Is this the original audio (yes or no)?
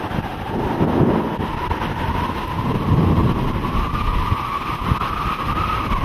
yes